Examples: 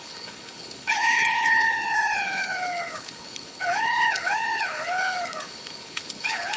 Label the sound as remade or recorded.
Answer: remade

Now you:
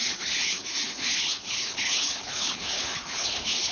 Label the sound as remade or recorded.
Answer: remade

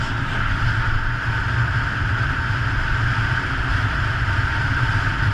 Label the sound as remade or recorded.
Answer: recorded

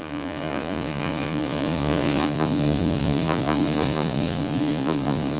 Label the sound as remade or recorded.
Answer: remade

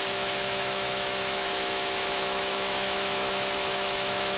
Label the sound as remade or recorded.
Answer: remade